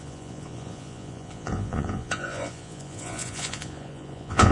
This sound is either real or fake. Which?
fake